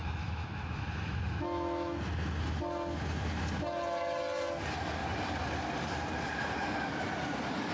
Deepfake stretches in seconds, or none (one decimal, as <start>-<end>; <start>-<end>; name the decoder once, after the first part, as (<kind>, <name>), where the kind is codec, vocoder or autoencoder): 0.0-2.0 (autoencoder, DAC-VAE)